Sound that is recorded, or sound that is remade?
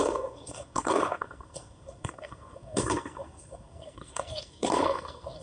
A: remade